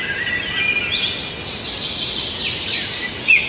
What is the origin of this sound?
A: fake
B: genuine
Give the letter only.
B